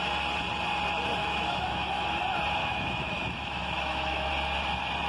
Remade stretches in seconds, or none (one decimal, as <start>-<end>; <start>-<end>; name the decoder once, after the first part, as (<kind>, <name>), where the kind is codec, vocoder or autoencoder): 1.2-2.2 (autoencoder, DAC-VAE); 2.6-4.3